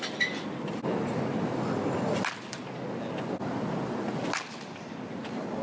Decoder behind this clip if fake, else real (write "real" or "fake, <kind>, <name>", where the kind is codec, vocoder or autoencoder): real